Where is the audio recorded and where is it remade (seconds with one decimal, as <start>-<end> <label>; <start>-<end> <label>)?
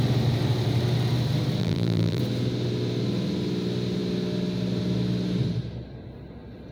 0.0-1.6 recorded; 1.6-2.2 remade; 2.2-6.7 recorded